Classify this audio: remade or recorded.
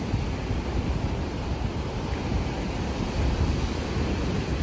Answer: recorded